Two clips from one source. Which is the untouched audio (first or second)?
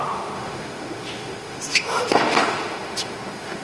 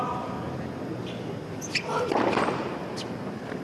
second